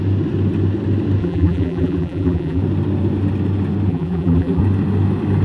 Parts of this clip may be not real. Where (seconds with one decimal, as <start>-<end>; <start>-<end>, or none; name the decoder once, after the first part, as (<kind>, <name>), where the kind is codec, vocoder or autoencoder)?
1.2-2.6 (vocoder, BigVGAN v2); 3.9-4.6